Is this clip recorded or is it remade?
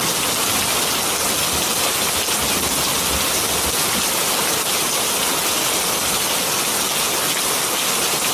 recorded